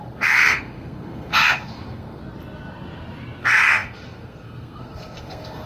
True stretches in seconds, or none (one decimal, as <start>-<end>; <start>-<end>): 2.2-3.4